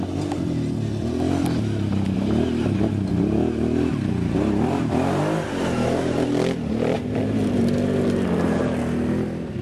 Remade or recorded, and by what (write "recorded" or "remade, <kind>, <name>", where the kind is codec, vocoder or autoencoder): recorded